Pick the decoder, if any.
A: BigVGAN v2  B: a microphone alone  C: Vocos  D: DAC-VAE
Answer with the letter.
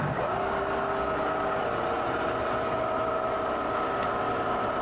B